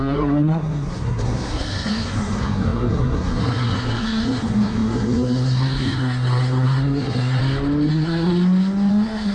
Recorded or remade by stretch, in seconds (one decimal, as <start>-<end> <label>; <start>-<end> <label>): 0.0-7.4 remade; 7.4-7.9 recorded; 7.9-8.3 remade; 8.3-8.9 recorded; 8.9-9.3 remade